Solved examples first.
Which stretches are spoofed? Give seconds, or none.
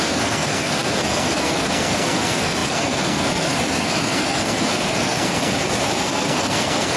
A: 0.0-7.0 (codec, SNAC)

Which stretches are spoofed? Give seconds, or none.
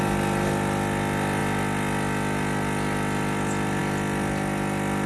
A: none